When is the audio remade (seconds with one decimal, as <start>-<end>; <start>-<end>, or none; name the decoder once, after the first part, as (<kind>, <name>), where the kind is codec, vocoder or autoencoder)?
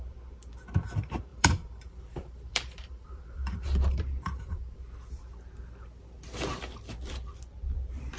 1.3-4.8 (vocoder, BigVGAN v2)